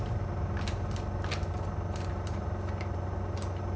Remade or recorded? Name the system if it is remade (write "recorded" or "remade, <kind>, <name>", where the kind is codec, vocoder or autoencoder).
recorded